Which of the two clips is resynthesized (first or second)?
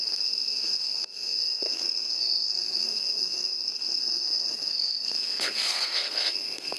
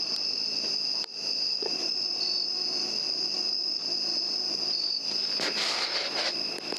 first